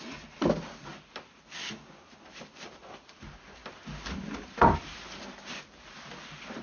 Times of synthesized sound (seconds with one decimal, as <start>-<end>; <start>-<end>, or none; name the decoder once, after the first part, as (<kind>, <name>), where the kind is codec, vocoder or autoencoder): none